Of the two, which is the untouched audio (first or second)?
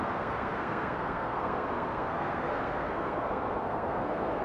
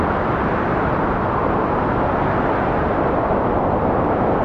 second